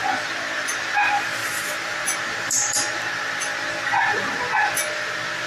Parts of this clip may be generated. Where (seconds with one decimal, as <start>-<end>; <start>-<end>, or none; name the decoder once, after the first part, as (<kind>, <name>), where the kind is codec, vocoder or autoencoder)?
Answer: 1.4-3.0 (vocoder, BigVGAN v2)